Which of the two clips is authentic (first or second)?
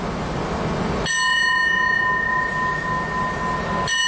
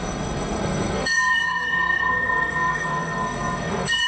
first